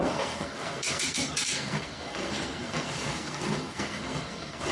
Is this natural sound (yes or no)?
no